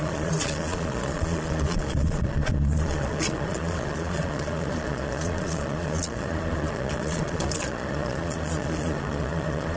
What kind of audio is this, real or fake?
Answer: fake